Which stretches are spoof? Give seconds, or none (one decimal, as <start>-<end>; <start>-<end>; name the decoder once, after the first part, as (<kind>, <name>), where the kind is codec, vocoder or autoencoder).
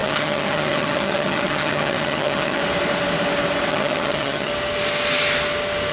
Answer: 0.0-2.6 (vocoder, HiFi-GAN); 3.7-4.5